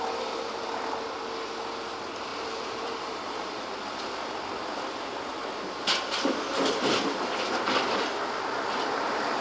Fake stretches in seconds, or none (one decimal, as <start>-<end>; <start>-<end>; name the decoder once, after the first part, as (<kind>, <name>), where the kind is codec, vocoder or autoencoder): 2.3-3.7 (vocoder, BigVGAN v2)